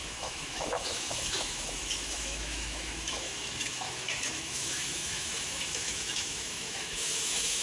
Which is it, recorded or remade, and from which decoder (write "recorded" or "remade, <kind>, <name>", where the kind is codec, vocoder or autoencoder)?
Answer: remade, autoencoder, DAC-VAE